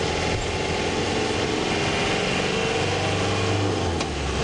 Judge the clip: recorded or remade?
recorded